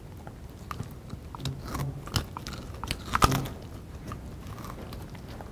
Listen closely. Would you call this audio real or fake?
real